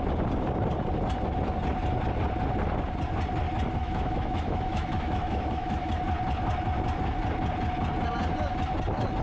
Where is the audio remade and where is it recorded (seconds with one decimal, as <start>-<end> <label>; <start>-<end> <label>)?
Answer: 0.0-3.8 recorded; 3.8-5.9 remade; 5.9-9.2 recorded